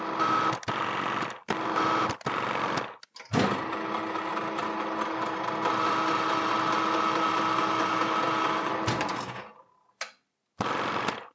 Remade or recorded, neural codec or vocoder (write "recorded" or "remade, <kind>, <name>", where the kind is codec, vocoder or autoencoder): recorded